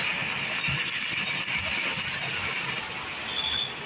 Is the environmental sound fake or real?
real